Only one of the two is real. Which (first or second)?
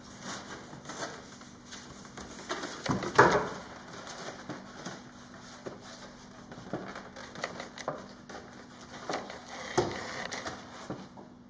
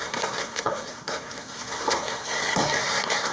first